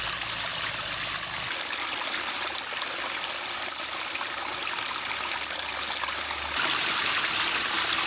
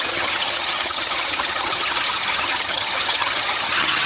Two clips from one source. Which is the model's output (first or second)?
second